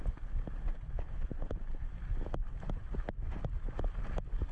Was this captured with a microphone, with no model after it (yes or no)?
yes